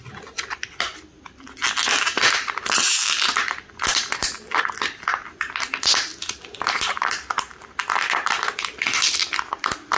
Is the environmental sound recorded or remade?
recorded